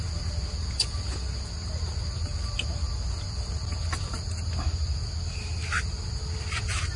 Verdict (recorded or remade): recorded